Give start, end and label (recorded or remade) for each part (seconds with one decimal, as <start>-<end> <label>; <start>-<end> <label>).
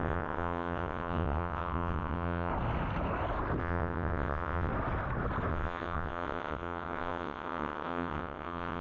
0.0-2.5 remade; 2.5-3.6 recorded; 3.6-4.7 remade; 4.7-5.5 recorded; 5.5-8.8 remade